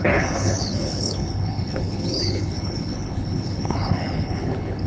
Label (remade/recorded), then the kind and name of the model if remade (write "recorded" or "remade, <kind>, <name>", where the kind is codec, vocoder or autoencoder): remade, codec, HILCodec